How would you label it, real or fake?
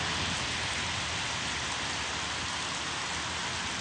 real